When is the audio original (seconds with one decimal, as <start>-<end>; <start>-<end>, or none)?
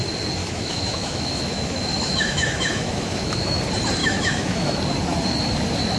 0.0-0.4; 3.6-4.0; 4.8-6.0